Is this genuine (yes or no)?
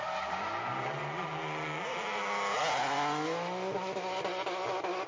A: yes